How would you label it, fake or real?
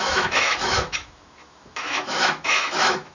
fake